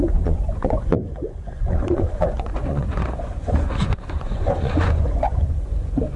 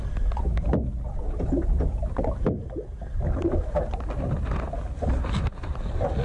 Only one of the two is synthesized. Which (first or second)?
first